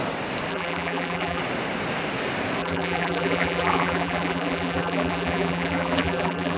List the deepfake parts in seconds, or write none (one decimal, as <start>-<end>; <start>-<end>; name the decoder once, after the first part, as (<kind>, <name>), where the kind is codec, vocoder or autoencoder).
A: 0.5-1.4 (vocoder, BigVGAN v2); 2.6-6.6